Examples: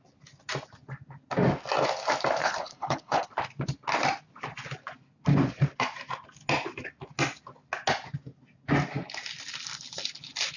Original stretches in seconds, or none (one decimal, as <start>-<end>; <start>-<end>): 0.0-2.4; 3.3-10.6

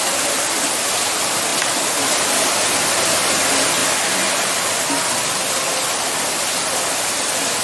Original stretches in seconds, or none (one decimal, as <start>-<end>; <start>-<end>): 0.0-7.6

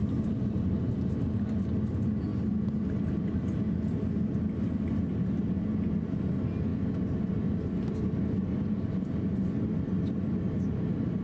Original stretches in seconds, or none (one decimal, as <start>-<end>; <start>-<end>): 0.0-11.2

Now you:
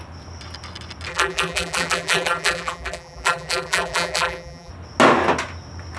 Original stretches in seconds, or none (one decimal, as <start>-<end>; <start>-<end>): 0.0-1.1; 4.7-6.0